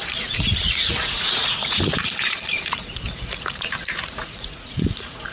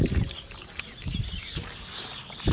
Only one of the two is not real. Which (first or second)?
first